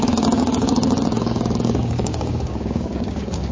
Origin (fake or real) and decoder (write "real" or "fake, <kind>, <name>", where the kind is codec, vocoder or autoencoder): fake, codec, DAC